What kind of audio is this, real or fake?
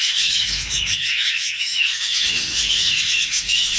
fake